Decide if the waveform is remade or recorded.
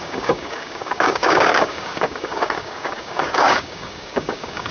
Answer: remade